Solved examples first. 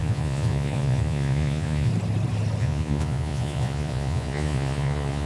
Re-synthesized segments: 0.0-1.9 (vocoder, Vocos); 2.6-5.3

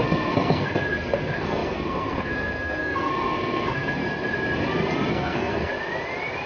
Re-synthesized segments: 0.0-4.0 (codec, SNAC); 5.1-5.7

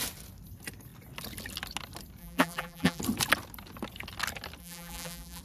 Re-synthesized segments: 2.2-3.0 (vocoder, BigVGAN v2); 4.6-5.4

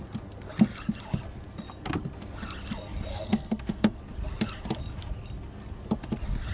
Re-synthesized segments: 3.1-4.0 (codec, SNAC)

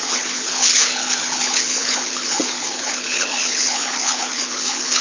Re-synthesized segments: 0.0-5.0 (codec, HILCodec)

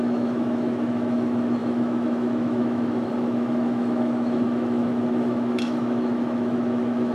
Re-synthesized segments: 0.0-7.1 (autoencoder, DAC-VAE)

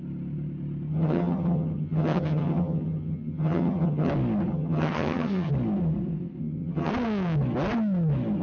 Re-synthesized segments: 0.9-4.1 (vocoder, HiFi-GAN); 4.5-5.5; 6.4-6.9